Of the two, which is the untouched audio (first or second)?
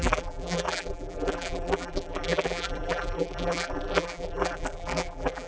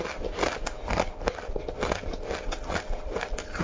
second